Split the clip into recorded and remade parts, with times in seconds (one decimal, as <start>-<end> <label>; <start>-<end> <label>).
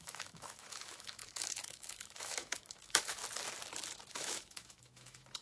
0.0-3.2 remade; 3.2-4.1 recorded; 4.1-5.4 remade